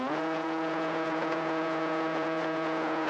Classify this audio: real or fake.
fake